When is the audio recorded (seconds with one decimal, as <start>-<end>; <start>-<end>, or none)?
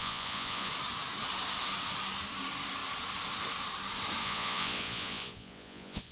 0.7-4.2